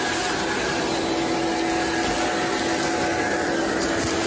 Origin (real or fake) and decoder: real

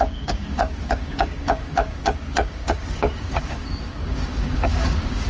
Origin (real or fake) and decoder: fake, codec, DAC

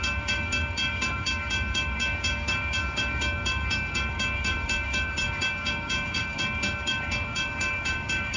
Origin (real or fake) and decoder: fake, codec, DAC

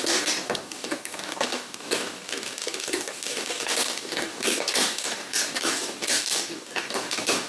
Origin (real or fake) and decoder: fake, codec, DAC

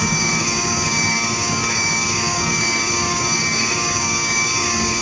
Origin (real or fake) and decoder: fake, codec, DAC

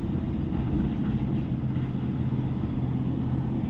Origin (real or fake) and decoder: real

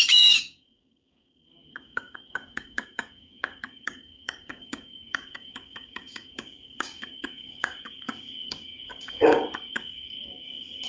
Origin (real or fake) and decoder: fake, codec, DAC